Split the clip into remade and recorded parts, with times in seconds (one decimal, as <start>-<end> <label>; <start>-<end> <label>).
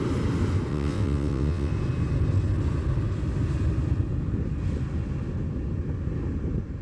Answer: 0.0-0.7 recorded; 0.7-1.7 remade; 1.7-6.8 recorded